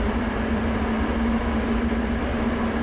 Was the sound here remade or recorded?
recorded